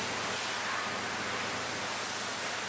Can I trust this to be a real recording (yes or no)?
yes